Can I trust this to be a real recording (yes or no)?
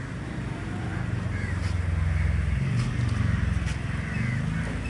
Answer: yes